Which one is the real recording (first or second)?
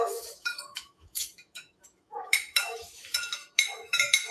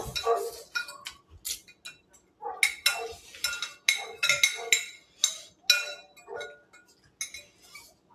second